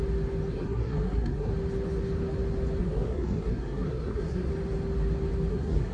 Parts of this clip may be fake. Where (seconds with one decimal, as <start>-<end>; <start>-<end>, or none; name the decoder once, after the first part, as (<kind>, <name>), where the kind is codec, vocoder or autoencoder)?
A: 0.5-1.5 (codec, SNAC); 2.8-4.5; 5.5-5.9